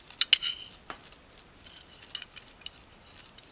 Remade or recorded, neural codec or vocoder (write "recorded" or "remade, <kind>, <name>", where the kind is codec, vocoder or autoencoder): recorded